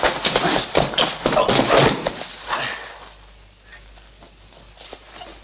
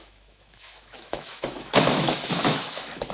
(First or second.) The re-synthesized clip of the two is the second